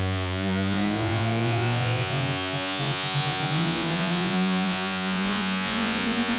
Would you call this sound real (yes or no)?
no